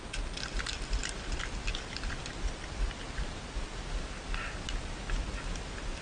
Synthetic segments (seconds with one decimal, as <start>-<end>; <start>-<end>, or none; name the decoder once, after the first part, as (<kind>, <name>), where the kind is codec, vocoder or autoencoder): none